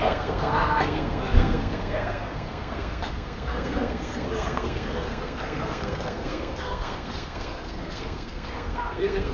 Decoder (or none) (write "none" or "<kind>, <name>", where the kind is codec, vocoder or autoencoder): codec, SNAC